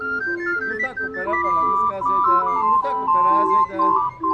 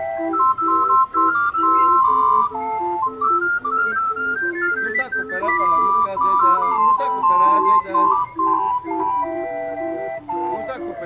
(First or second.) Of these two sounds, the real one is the first